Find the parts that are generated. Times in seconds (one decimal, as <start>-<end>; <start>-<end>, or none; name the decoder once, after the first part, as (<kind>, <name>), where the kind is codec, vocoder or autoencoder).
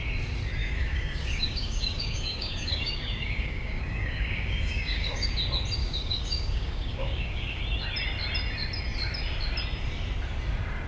0.6-5.3 (codec, DAC); 5.8-7.6